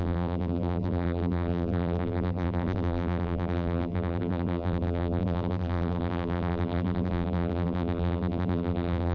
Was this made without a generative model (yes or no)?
no